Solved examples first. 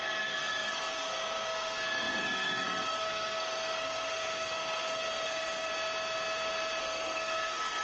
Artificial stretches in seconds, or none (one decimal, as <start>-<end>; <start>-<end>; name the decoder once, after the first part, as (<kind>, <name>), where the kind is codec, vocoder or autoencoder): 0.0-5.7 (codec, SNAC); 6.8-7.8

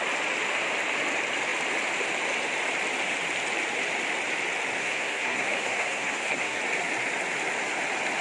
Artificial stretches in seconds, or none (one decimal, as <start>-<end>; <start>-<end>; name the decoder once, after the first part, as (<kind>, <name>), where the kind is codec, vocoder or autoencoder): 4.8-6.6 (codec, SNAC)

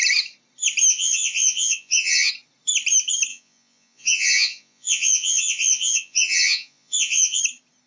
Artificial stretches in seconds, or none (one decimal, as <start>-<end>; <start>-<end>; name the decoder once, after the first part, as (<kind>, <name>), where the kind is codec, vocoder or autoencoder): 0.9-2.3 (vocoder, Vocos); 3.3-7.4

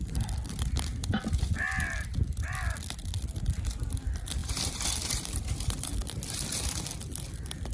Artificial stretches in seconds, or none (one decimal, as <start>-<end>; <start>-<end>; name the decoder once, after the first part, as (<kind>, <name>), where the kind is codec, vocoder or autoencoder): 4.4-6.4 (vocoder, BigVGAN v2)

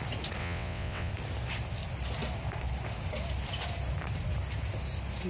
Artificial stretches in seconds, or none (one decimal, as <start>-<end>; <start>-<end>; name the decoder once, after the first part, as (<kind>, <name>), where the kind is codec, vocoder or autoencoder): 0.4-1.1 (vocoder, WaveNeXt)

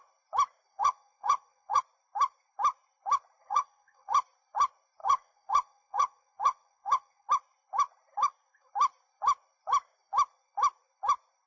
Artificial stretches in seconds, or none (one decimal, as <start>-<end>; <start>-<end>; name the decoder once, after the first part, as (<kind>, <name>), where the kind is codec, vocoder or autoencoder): 0.7-1.8 (vocoder, WaveNeXt); 3.4-4.2; 5.0-7.3

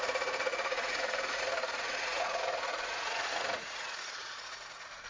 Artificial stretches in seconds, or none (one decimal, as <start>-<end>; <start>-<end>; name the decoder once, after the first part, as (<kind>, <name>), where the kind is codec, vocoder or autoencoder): 0.0-5.1 (vocoder, Vocos)